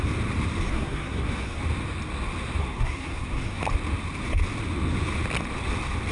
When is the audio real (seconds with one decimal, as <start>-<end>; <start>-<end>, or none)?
0.0-0.7; 1.6-2.6; 3.6-6.1